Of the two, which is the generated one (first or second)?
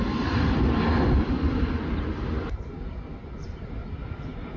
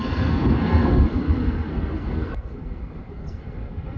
second